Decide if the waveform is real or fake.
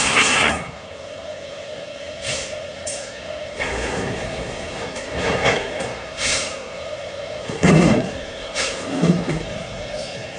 fake